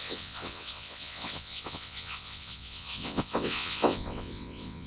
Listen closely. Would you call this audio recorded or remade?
remade